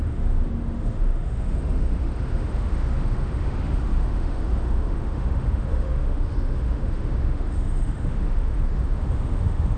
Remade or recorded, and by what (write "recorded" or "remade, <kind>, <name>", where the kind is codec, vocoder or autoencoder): remade, autoencoder, DAC-VAE